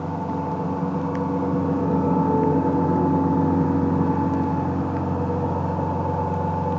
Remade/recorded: recorded